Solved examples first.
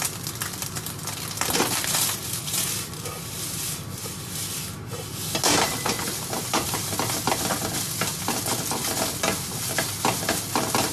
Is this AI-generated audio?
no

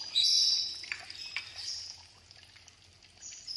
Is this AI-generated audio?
no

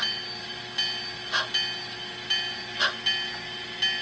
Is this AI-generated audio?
no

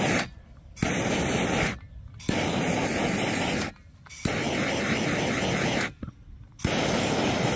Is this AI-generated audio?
no